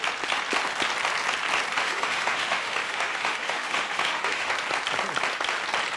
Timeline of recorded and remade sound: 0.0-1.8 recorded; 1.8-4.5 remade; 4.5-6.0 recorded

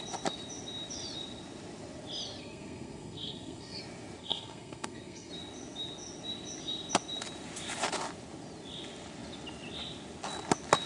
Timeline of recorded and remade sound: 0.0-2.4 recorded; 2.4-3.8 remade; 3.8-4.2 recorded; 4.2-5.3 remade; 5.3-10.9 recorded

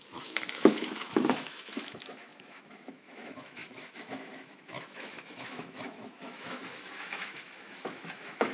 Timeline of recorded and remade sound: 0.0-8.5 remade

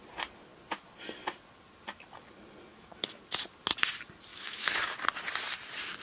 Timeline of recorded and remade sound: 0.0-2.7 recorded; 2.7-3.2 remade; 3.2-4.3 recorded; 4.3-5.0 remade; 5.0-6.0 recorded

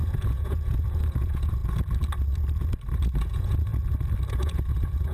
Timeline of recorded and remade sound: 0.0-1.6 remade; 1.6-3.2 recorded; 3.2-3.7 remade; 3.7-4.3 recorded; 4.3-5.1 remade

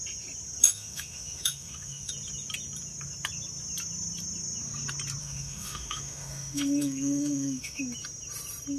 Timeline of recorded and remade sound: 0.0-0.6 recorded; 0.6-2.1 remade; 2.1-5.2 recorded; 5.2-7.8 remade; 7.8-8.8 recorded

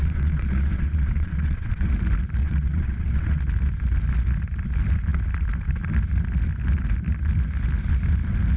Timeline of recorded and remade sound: 0.0-1.9 remade; 1.9-2.4 recorded; 2.4-3.4 remade; 3.4-8.6 recorded

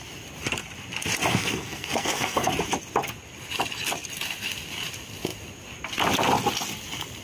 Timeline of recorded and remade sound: 0.0-1.3 recorded; 1.3-2.5 remade; 2.5-7.2 recorded